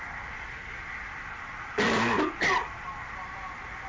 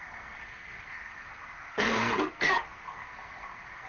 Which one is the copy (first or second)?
second